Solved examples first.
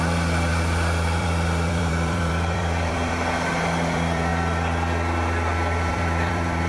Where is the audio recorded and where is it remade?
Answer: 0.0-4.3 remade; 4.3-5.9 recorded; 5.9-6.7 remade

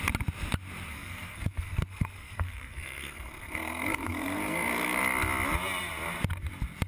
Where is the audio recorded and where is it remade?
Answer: 0.0-0.9 recorded; 0.9-5.0 remade; 5.0-6.9 recorded

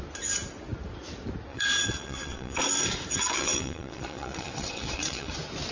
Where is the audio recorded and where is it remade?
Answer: 0.0-1.5 recorded; 1.5-2.6 remade; 2.6-3.1 recorded; 3.1-5.3 remade; 5.3-5.7 recorded

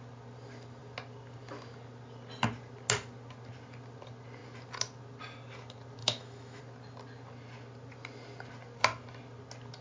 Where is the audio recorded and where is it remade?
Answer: 0.0-6.0 recorded; 6.0-6.6 remade; 6.6-9.8 recorded

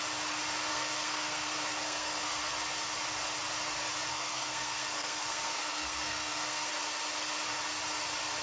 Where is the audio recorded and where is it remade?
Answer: 0.0-0.7 recorded; 0.7-2.4 remade; 2.4-4.1 recorded; 4.1-6.7 remade; 6.7-8.4 recorded